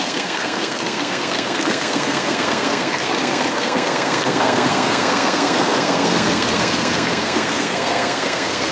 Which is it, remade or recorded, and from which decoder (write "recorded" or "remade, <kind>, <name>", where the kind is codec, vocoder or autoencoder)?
remade, codec, SNAC